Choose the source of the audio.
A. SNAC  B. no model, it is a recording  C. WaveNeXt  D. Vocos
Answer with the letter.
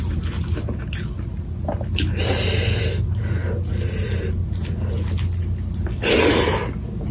B